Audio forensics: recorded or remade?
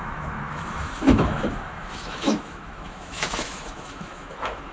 remade